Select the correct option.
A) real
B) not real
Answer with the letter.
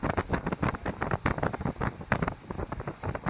B